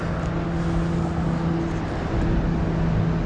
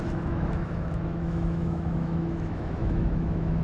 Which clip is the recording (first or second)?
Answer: first